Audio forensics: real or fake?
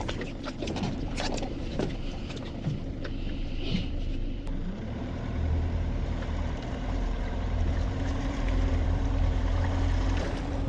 fake